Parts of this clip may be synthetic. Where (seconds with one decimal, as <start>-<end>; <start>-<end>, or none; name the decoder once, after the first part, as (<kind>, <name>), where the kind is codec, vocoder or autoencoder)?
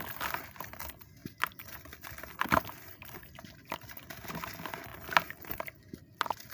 1.2-4.5 (vocoder, BigVGAN v2)